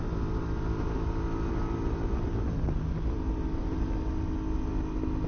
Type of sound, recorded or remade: recorded